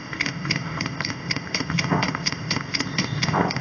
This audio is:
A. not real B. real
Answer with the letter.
A